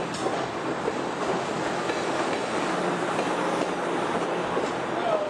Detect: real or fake fake